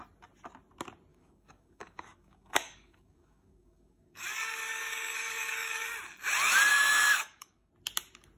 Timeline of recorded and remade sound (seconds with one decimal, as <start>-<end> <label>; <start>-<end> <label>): 0.0-1.1 recorded; 1.1-5.9 remade; 5.9-6.7 recorded; 6.7-7.7 remade; 7.7-8.4 recorded

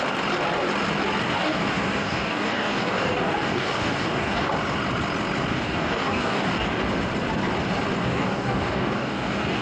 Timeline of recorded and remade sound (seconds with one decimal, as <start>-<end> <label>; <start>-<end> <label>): 0.0-1.3 recorded; 1.3-4.5 remade; 4.5-5.5 recorded; 5.5-6.9 remade; 6.9-8.0 recorded; 8.0-9.6 remade

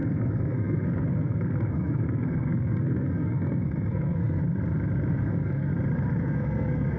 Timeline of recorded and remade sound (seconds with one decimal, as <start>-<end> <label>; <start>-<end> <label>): 0.0-4.4 remade; 4.4-5.1 recorded; 5.1-5.7 remade; 5.7-6.2 recorded; 6.2-7.0 remade

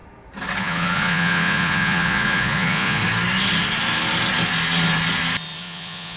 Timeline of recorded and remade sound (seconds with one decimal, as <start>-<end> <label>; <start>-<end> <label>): 0.0-0.6 recorded; 0.6-3.0 remade; 3.0-5.6 recorded; 5.6-6.2 remade

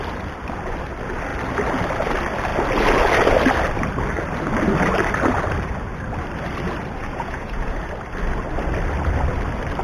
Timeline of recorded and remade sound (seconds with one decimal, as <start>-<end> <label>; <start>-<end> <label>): 0.0-7.0 recorded; 7.0-7.9 remade; 7.9-9.8 recorded

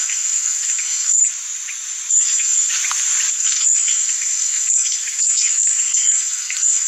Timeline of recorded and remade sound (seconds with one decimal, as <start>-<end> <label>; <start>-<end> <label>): 0.0-1.2 remade; 1.2-2.1 recorded; 2.1-2.7 remade; 2.7-3.3 recorded; 3.3-6.9 remade